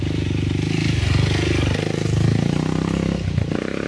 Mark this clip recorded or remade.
recorded